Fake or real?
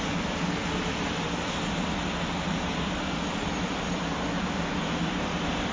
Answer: real